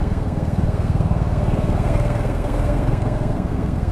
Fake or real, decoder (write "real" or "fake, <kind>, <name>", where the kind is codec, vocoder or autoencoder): fake, codec, SNAC